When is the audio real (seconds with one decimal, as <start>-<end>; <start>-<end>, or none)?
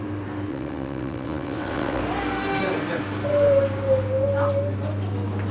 0.0-0.5; 2.0-5.5